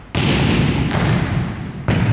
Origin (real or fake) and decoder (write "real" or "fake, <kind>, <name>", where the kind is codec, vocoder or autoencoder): real